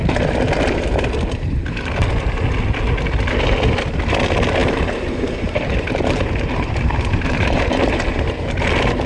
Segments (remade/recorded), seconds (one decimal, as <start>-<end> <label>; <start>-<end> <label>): 0.0-4.6 recorded; 4.6-8.5 remade; 8.5-9.1 recorded